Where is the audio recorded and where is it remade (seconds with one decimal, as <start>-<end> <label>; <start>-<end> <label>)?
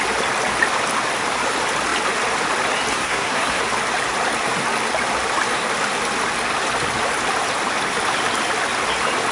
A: 0.0-2.9 recorded; 2.9-3.6 remade; 3.6-9.3 recorded